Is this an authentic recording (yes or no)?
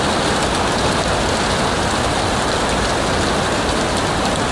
yes